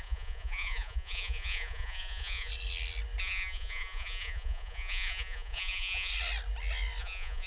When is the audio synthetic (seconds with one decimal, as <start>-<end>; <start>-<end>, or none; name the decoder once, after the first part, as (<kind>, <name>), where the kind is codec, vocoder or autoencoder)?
0.0-2.5 (vocoder, Vocos); 3.2-6.1; 7.0-7.5